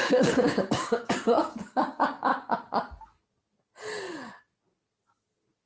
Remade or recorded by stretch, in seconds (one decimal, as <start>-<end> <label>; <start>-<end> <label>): 0.0-2.3 remade; 2.3-5.7 recorded